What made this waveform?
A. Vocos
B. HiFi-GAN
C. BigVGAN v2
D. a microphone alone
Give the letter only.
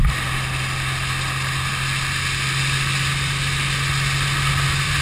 D